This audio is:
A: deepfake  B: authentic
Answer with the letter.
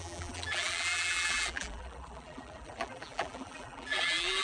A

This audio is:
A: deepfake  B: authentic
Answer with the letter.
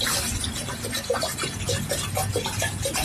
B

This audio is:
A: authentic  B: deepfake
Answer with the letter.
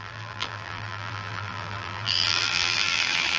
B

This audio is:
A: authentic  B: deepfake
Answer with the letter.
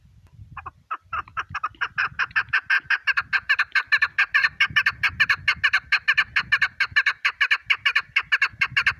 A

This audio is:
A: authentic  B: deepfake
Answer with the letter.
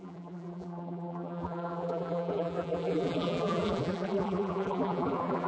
B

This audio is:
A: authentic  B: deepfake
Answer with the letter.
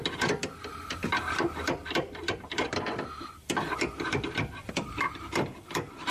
B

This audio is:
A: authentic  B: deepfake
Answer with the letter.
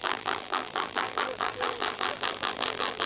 B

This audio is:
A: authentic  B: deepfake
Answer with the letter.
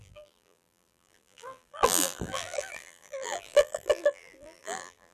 B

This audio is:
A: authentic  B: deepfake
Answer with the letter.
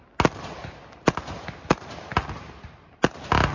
A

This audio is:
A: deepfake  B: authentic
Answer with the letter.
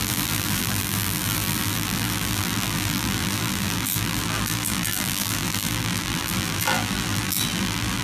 A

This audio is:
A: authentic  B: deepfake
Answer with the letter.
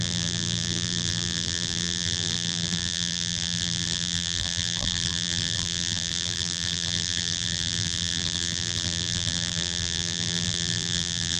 B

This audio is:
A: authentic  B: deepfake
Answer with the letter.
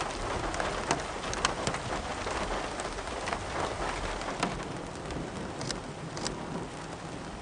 A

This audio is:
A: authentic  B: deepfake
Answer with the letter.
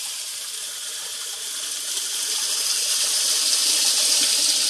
A